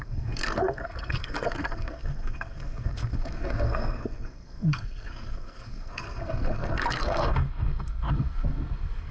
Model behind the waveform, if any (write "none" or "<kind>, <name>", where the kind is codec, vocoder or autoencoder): codec, SNAC